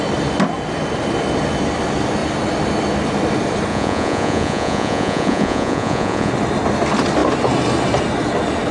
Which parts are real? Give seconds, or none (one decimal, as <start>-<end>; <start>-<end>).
0.0-3.7; 6.3-8.7